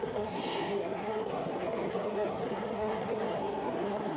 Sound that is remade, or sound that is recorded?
remade